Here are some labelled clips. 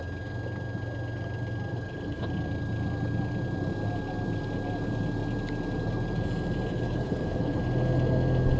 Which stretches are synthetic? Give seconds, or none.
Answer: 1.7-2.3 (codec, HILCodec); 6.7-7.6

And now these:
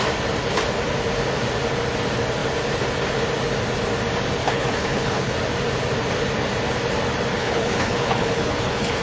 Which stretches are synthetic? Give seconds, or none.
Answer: 4.4-5.3 (codec, HILCodec); 7.3-9.0

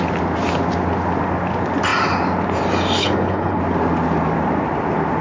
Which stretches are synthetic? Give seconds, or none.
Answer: 3.0-3.6 (codec, HILCodec)

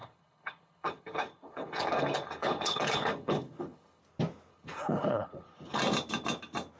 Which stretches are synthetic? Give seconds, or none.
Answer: 0.0-4.0 (codec, HILCodec); 4.5-5.8

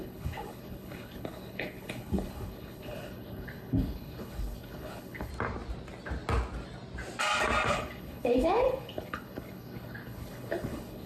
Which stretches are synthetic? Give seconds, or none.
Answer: 0.0-5.3 (codec, HILCodec); 7.7-11.1